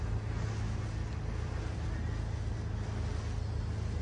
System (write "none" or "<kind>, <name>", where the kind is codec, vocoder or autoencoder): none